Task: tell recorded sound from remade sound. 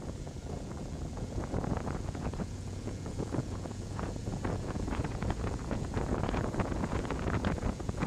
remade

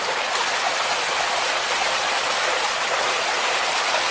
recorded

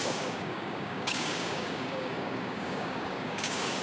remade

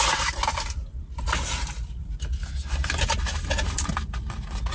recorded